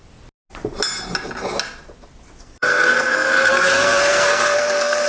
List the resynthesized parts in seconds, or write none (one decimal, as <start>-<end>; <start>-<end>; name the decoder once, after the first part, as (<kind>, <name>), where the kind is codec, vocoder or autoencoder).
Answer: 2.4-5.1 (codec, SNAC)

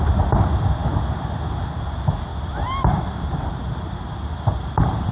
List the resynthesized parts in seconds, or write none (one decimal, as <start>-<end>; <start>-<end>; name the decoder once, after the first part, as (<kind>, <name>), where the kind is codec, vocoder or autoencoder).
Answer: 2.3-5.1 (vocoder, BigVGAN v2)

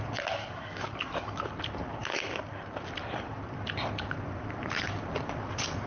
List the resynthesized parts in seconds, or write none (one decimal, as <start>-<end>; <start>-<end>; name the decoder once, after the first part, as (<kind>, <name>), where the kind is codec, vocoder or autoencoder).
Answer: 0.4-1.4 (codec, DAC)

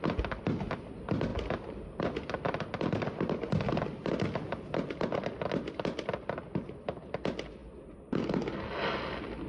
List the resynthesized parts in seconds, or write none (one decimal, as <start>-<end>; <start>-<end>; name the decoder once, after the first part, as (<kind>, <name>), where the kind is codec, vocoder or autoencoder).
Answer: none

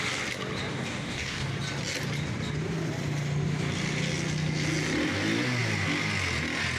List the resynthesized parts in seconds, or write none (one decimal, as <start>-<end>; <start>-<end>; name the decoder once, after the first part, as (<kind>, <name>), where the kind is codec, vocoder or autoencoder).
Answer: 0.7-1.5 (codec, DAC)

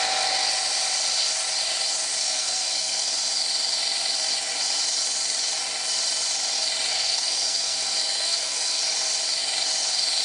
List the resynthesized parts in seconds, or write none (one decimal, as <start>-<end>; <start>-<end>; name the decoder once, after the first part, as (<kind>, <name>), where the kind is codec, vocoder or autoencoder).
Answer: 2.2-3.1 (codec, SNAC); 6.9-8.8